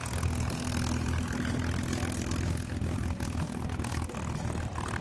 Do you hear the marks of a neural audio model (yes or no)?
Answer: no